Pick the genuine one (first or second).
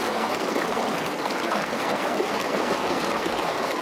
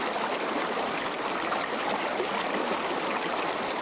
second